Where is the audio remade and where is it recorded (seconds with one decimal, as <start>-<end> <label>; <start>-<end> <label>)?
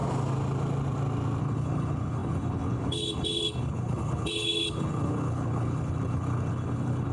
0.0-1.4 recorded; 1.4-7.1 remade